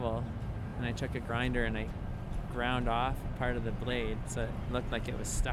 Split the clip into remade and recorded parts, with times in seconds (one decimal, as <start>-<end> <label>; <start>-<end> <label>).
0.0-5.5 recorded